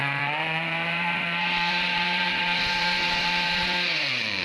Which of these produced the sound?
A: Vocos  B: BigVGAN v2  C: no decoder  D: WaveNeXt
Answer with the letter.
A